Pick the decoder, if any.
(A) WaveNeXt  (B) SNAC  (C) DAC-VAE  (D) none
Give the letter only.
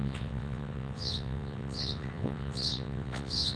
A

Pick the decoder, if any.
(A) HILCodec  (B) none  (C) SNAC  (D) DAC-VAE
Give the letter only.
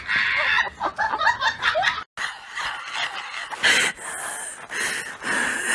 B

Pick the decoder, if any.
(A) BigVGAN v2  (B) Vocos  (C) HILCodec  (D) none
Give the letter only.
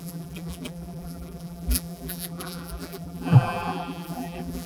A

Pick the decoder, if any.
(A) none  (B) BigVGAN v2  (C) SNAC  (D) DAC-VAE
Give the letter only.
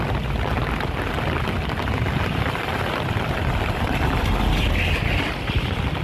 A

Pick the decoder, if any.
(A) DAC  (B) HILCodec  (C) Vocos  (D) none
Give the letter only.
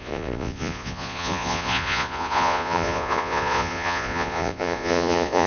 C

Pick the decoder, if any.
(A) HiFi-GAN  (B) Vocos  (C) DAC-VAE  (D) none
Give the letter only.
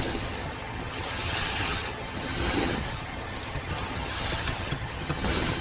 A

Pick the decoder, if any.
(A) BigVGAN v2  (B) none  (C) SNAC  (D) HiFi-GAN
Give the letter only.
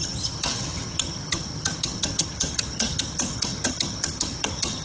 D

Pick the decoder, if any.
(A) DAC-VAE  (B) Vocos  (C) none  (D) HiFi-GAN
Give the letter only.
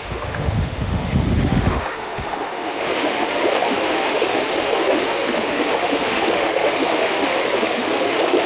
A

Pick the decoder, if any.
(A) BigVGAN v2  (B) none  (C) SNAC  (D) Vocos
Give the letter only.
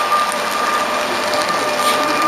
B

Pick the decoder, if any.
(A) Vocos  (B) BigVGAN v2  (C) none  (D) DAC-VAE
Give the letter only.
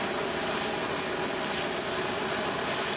C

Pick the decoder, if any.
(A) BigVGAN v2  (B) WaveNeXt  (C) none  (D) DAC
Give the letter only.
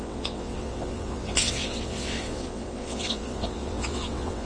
B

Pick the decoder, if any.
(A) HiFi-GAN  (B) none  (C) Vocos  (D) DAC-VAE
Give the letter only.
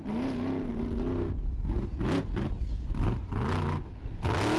B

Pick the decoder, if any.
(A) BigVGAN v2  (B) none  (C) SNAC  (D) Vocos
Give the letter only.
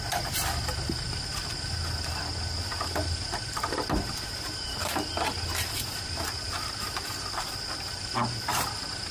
B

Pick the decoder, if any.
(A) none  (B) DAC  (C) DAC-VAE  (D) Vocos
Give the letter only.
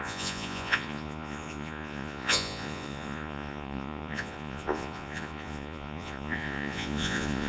D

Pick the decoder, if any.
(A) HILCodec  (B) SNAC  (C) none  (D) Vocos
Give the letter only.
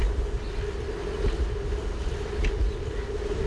C